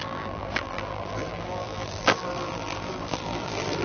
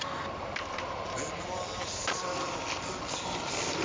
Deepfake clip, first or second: first